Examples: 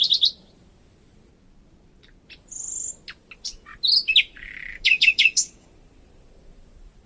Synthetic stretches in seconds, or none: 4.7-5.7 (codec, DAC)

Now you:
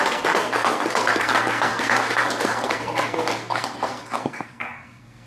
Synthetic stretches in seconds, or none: 0.0-5.3 (codec, SNAC)

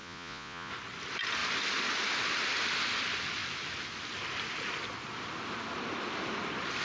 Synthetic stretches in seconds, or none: 0.0-0.7 (vocoder, Vocos)

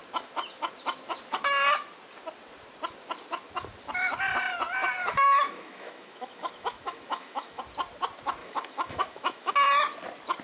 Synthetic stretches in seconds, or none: 5.0-7.6 (autoencoder, DAC-VAE); 8.4-9.5

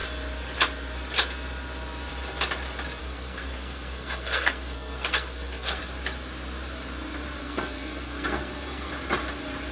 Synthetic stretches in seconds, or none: 3.0-5.8 (codec, SNAC); 7.4-8.9

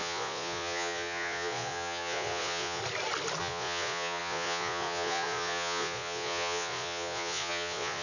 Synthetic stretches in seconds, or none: 0.0-2.8 (vocoder, Vocos); 3.4-8.0